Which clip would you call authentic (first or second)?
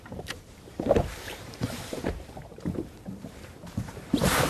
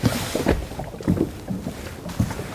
second